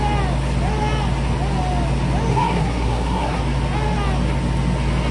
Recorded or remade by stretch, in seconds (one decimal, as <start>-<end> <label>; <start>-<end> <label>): 0.0-2.3 recorded; 2.3-3.4 remade; 3.4-5.1 recorded